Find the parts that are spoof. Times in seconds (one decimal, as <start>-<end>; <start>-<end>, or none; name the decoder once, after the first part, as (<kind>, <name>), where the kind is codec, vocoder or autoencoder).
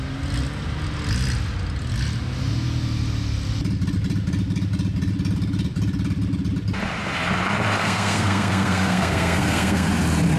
7.8-9.9 (codec, SNAC)